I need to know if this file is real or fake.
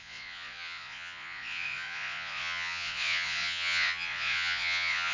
fake